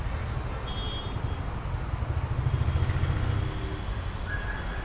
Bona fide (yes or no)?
yes